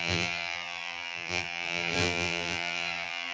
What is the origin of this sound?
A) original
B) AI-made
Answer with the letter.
B